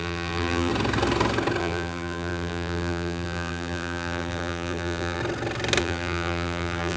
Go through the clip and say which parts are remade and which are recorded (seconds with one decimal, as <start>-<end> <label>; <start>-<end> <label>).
0.0-0.7 remade; 0.7-1.6 recorded; 1.6-5.2 remade; 5.2-5.8 recorded; 5.8-7.0 remade